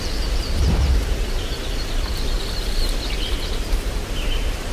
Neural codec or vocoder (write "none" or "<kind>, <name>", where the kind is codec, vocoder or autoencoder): vocoder, BigVGAN v2